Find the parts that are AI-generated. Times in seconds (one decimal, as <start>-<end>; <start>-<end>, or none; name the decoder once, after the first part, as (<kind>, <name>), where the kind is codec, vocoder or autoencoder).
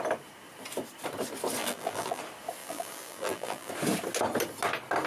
1.6-2.2 (vocoder, BigVGAN v2); 2.6-3.7